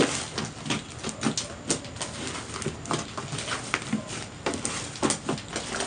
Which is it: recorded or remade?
recorded